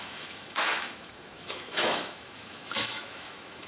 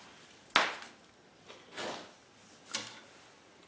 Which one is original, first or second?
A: second